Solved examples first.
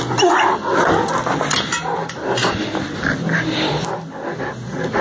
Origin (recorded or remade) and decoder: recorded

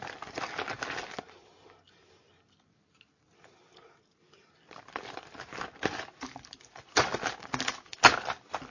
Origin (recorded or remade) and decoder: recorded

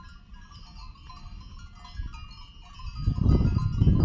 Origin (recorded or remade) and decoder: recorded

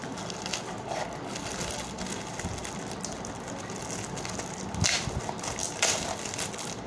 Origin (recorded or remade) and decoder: recorded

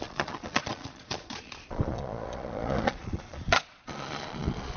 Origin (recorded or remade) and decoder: remade, vocoder, Vocos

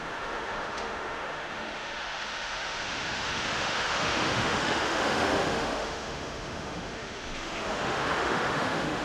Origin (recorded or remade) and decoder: remade, autoencoder, DAC-VAE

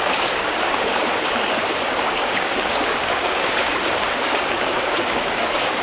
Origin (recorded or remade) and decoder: remade, codec, DAC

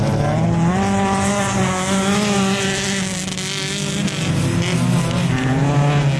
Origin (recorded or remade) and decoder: recorded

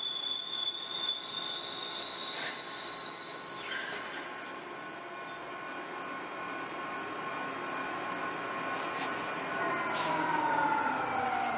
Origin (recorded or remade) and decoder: recorded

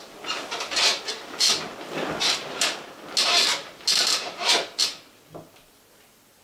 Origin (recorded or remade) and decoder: recorded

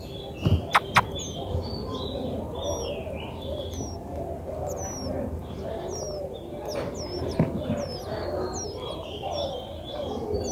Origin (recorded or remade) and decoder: recorded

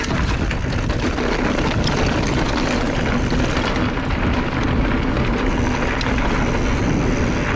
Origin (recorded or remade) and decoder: recorded